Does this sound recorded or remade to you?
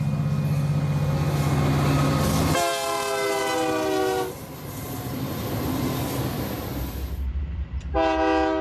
recorded